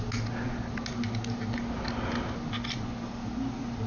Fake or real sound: real